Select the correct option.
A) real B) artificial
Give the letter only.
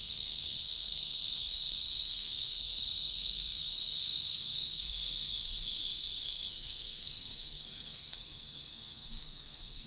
B